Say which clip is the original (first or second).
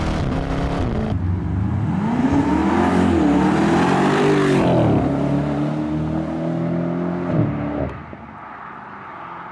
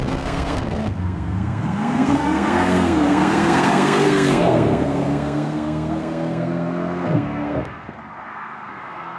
first